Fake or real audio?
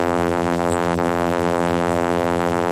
fake